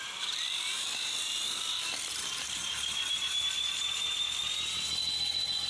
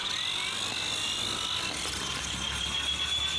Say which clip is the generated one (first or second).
first